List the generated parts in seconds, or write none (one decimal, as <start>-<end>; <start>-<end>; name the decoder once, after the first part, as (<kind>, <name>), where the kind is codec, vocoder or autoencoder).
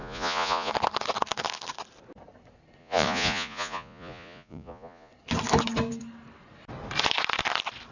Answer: 0.0-0.7 (vocoder, Vocos); 2.8-5.1